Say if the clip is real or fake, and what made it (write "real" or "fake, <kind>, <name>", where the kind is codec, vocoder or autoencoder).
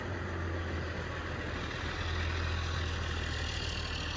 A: real